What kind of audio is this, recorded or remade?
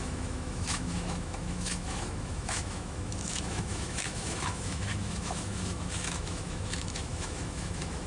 remade